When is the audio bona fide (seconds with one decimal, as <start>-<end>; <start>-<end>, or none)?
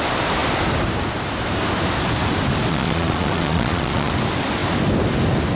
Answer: 0.0-2.7; 4.1-5.5